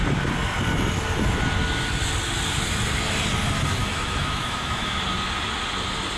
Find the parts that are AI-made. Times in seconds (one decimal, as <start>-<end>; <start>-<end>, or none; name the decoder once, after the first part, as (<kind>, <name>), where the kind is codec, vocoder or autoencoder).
3.8-5.0 (autoencoder, DAC-VAE)